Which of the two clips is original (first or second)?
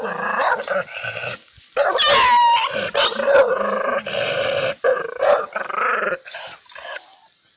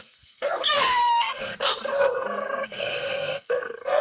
first